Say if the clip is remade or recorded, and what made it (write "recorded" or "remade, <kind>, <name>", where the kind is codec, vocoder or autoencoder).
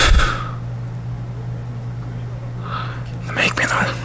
recorded